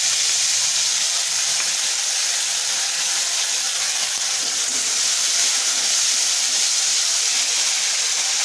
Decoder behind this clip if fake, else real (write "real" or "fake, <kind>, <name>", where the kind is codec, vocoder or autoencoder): real